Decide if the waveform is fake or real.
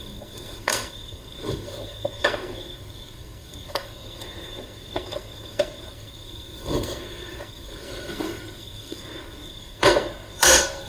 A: fake